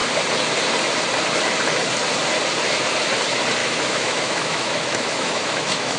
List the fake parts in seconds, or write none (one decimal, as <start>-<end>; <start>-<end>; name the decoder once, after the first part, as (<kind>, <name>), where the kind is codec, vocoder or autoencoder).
3.6-6.0 (autoencoder, DAC-VAE)